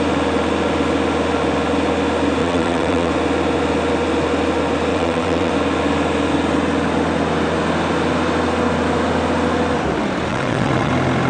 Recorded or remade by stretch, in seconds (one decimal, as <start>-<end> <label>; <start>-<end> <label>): 0.0-2.4 recorded; 2.4-3.1 remade; 3.1-4.9 recorded; 4.9-5.5 remade; 5.5-10.3 recorded; 10.3-10.9 remade; 10.9-11.3 recorded